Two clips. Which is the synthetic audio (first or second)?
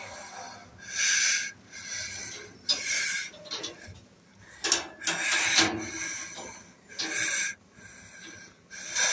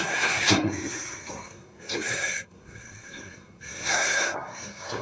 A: second